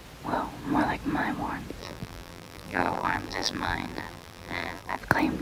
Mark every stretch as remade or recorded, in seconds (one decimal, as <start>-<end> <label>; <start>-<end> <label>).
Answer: 0.0-1.8 recorded; 1.8-5.0 remade; 5.0-5.4 recorded